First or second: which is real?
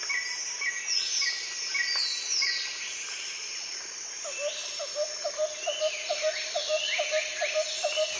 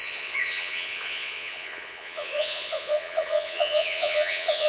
first